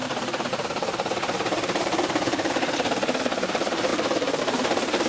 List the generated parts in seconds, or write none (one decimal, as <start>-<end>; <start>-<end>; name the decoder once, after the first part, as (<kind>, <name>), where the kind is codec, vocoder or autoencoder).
0.0-5.1 (vocoder, BigVGAN v2)